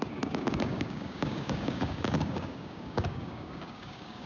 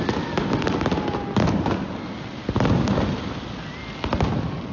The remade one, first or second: first